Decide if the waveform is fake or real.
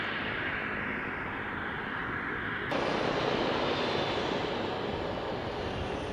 real